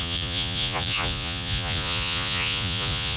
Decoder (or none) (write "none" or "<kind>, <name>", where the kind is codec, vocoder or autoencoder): vocoder, Vocos